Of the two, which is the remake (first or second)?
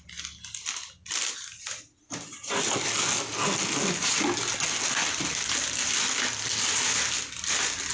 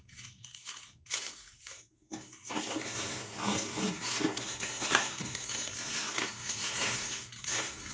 second